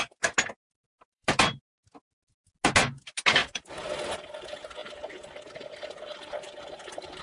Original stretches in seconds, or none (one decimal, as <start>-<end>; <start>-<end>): 0.0-0.9; 1.6-3.4; 4.1-4.8; 5.5-7.2